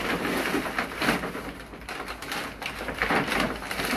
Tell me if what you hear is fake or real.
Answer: real